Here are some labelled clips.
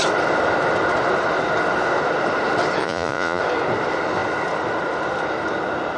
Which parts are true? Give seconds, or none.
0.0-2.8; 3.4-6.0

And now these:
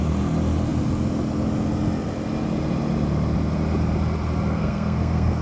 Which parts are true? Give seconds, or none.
0.0-4.5

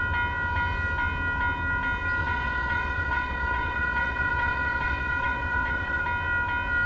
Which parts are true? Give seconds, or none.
0.0-2.2; 6.0-6.9

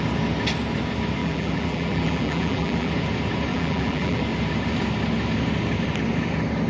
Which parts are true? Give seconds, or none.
0.0-1.2; 2.9-3.5; 4.2-6.7